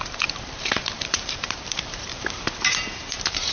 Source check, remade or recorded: remade